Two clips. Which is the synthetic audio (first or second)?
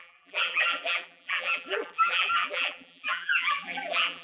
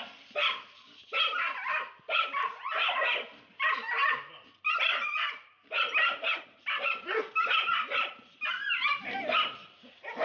first